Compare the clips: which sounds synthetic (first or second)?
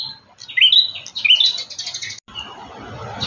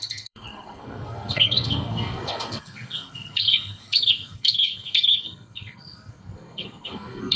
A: second